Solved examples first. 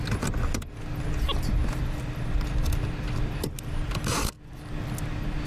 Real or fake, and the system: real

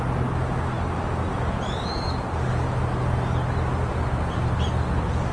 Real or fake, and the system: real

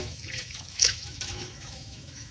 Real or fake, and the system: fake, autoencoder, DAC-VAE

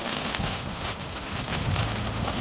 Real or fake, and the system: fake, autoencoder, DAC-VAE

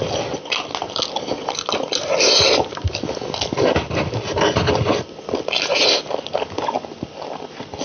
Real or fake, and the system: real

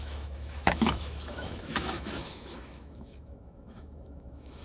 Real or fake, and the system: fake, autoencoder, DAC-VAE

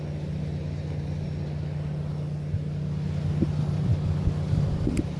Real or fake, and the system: real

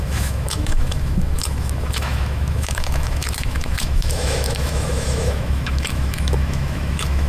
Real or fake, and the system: fake, autoencoder, DAC-VAE